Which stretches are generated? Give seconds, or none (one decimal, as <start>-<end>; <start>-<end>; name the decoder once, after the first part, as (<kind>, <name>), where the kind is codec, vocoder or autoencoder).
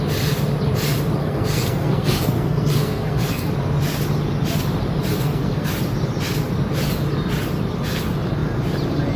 1.2-3.5 (codec, SNAC); 5.1-5.7